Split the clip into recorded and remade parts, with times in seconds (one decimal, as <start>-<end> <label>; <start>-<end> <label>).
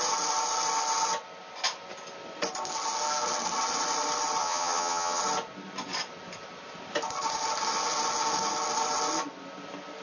0.0-4.4 recorded; 4.4-5.2 remade; 5.2-10.0 recorded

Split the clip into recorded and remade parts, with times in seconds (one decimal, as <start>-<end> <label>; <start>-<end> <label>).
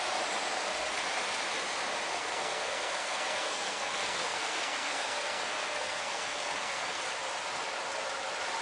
0.0-2.1 recorded; 2.1-7.0 remade; 7.0-8.6 recorded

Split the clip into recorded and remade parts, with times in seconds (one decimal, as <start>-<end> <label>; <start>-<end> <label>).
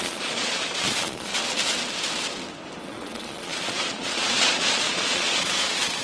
0.0-1.3 remade; 1.3-2.8 recorded; 2.8-6.0 remade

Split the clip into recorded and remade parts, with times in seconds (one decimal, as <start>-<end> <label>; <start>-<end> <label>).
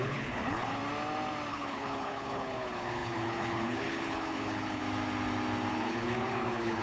0.0-0.8 remade; 0.8-1.5 recorded; 1.5-4.8 remade; 4.8-5.7 recorded; 5.7-6.8 remade